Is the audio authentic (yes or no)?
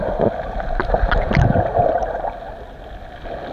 yes